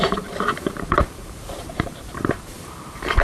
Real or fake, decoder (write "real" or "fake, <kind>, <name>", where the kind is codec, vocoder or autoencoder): fake, vocoder, BigVGAN v2